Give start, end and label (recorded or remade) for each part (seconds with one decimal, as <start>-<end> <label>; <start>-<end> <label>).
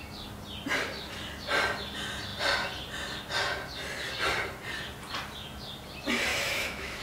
0.0-6.3 recorded; 6.3-7.0 remade